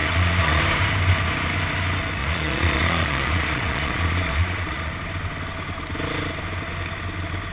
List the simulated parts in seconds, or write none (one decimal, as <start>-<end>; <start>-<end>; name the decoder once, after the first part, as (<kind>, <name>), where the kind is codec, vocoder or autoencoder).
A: 0.0-0.6 (vocoder, Vocos); 2.2-4.9